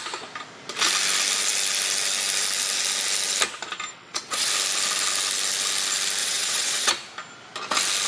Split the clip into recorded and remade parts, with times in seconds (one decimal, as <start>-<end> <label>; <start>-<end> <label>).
0.0-3.9 recorded; 3.9-4.5 remade; 4.5-6.2 recorded; 6.2-6.9 remade; 6.9-8.1 recorded